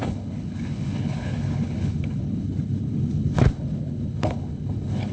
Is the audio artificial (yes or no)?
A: yes